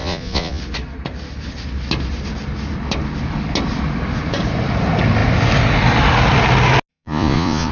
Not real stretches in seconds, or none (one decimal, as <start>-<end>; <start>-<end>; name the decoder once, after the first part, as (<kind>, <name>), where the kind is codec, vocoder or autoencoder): 0.0-0.6 (vocoder, Vocos); 6.9-7.7